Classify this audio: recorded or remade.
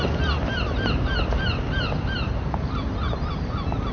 recorded